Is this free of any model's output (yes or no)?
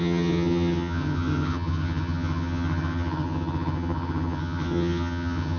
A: no